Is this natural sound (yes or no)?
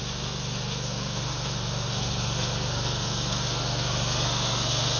no